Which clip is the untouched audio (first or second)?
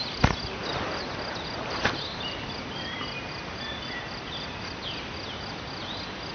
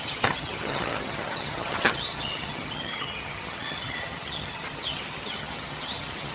first